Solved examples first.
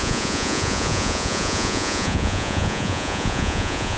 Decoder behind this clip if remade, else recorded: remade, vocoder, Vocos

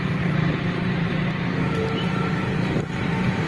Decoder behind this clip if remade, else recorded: remade, vocoder, BigVGAN v2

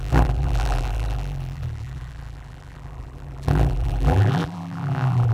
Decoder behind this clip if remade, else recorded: remade, vocoder, BigVGAN v2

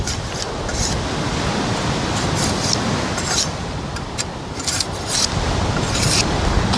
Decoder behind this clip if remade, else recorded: recorded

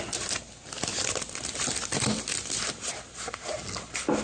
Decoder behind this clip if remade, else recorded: recorded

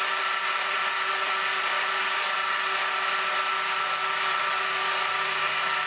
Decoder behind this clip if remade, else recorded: recorded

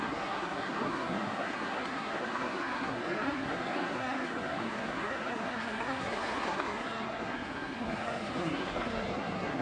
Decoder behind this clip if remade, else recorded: remade, codec, SNAC